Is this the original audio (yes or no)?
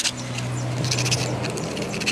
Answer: yes